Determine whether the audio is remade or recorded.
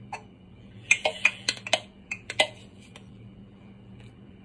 remade